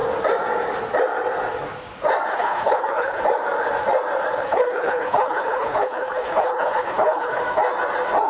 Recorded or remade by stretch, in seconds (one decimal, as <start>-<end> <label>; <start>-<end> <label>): 0.0-2.3 recorded; 2.3-3.2 remade; 3.2-4.4 recorded; 4.4-7.4 remade; 7.4-8.3 recorded